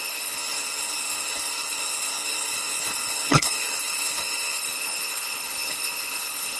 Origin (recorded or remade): remade